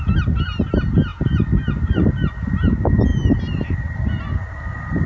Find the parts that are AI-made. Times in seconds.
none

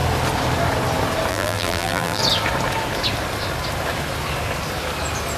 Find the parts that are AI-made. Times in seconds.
1.3-2.2 (vocoder, BigVGAN v2)

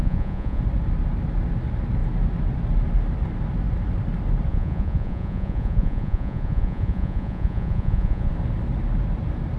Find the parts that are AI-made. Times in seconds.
0.0-0.6 (vocoder, Vocos); 4.5-8.3

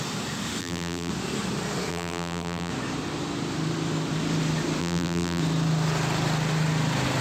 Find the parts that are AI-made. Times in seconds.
0.6-1.1 (vocoder, BigVGAN v2); 1.9-2.7; 4.8-5.4

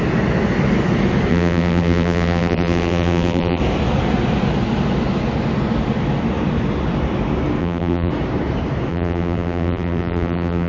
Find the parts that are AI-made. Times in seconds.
1.3-3.6 (vocoder, BigVGAN v2); 7.6-8.1; 8.9-10.7